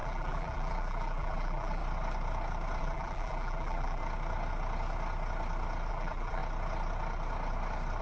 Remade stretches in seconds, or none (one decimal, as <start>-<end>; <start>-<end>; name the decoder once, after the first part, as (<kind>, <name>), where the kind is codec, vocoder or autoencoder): 0.0-1.8 (vocoder, BigVGAN v2); 2.8-4.0; 5.9-6.4